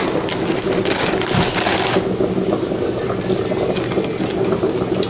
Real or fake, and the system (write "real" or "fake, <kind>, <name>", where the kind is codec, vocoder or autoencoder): real